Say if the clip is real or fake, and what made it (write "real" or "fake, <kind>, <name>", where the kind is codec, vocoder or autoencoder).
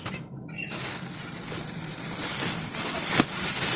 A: real